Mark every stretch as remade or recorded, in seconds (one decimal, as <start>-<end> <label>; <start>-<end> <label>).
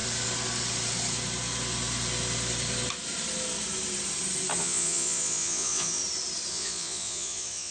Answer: 0.0-4.6 recorded; 4.6-6.0 remade; 6.0-6.5 recorded; 6.5-7.7 remade